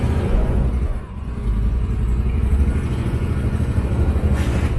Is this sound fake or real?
fake